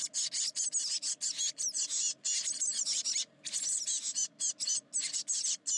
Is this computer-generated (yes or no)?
no